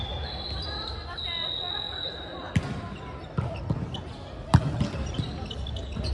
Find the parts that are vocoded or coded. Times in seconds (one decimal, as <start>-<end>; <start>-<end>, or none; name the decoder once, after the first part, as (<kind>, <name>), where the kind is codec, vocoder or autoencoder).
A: 2.6-3.6 (vocoder, BigVGAN v2)